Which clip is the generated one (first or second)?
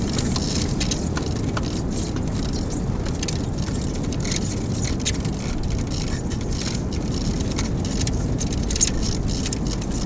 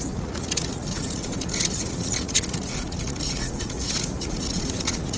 second